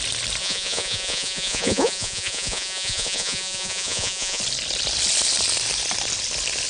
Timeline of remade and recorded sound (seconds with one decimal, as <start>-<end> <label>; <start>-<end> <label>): 0.0-0.4 recorded; 0.4-4.4 remade; 4.4-6.7 recorded